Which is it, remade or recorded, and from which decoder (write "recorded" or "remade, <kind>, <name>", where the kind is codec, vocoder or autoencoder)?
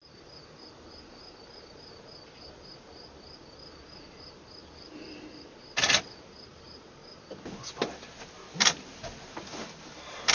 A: recorded